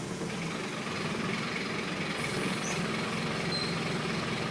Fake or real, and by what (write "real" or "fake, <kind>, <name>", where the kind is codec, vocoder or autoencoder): real